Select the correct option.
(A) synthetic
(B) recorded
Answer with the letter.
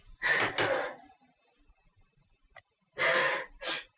B